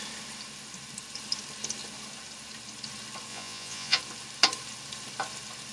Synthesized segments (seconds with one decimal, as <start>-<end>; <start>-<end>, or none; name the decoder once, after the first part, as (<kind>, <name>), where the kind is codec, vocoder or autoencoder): 3.3-4.0 (vocoder, Vocos)